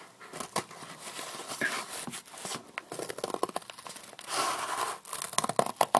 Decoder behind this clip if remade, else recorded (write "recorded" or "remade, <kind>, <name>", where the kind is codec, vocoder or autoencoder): recorded